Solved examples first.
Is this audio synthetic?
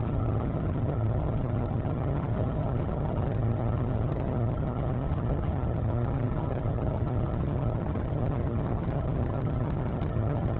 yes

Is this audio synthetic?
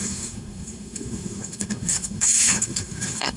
yes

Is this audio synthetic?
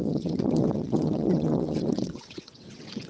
yes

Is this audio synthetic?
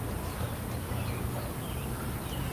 no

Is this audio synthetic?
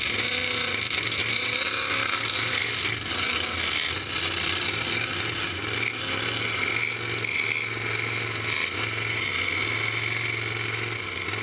no